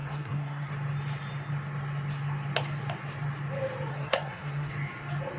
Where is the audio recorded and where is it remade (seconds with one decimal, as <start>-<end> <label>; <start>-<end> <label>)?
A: 0.0-0.7 remade; 0.7-3.9 recorded; 3.9-4.7 remade; 4.7-5.4 recorded